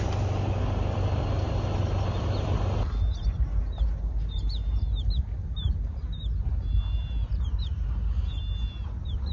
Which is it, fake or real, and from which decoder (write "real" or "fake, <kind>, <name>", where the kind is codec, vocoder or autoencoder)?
real